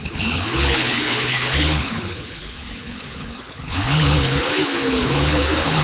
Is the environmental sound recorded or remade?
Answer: remade